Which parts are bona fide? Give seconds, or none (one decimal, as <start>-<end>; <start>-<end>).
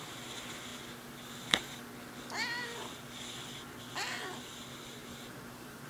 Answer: 0.0-5.0